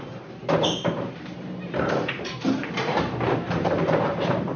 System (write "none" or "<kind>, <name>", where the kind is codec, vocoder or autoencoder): vocoder, BigVGAN v2